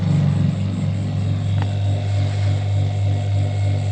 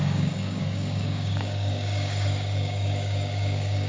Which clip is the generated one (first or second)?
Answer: second